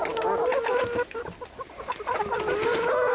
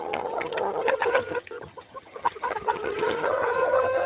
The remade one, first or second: second